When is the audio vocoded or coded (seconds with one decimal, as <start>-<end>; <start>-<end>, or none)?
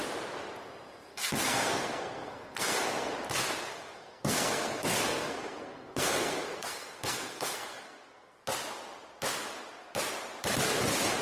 1.1-3.1; 3.7-8.4